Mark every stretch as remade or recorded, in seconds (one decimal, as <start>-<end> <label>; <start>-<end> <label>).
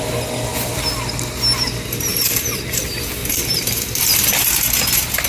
0.0-2.1 recorded; 2.1-2.8 remade; 2.8-3.2 recorded; 3.2-4.3 remade; 4.3-5.3 recorded